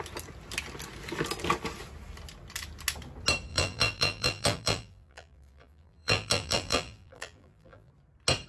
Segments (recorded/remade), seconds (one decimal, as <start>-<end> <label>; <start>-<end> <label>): 0.0-3.5 recorded; 3.5-7.9 remade; 7.9-8.5 recorded

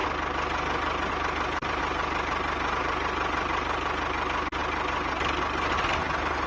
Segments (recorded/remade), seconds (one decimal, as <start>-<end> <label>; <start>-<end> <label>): 0.0-6.5 recorded

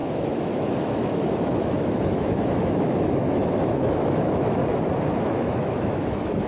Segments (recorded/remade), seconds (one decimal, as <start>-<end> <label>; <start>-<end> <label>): 0.0-4.6 remade; 4.6-5.1 recorded; 5.1-6.5 remade

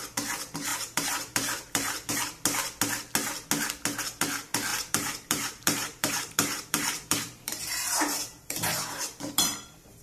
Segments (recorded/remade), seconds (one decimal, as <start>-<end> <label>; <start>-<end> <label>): 0.0-0.7 recorded; 0.7-2.1 remade; 2.1-4.7 recorded; 4.7-10.0 remade

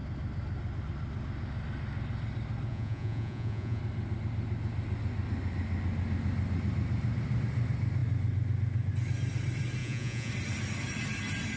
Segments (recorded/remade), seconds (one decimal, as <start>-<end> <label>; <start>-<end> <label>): 0.0-2.7 recorded; 2.7-3.8 remade; 3.8-9.8 recorded; 9.8-10.3 remade; 10.3-11.6 recorded